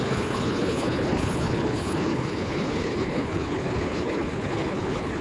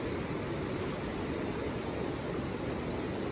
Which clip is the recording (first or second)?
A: second